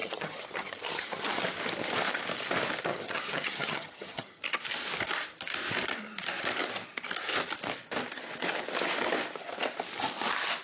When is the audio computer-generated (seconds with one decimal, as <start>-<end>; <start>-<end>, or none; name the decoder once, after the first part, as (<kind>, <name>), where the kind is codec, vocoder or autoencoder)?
0.0-1.4 (vocoder, HiFi-GAN); 2.9-4.4